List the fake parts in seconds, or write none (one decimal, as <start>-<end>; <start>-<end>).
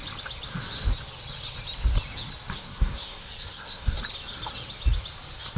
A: 2.5-4.0